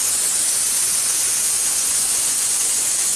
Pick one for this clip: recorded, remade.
remade